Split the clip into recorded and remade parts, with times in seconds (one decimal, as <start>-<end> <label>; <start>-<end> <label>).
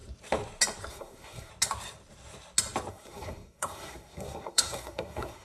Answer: 0.0-0.9 recorded; 0.9-1.5 remade; 1.5-2.9 recorded; 2.9-5.4 remade